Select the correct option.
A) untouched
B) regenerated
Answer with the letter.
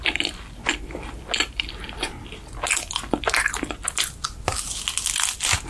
A